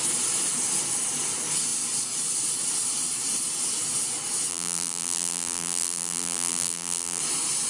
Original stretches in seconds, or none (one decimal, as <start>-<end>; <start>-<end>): 0.0-4.5; 7.2-7.7